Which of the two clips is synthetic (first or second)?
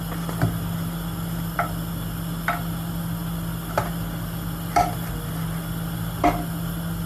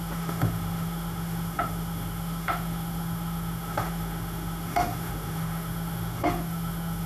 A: second